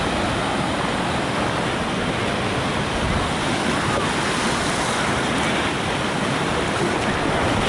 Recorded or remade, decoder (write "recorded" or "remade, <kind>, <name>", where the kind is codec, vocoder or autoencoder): recorded